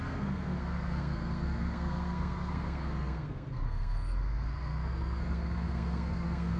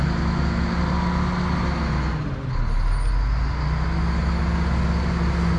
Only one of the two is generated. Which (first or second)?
first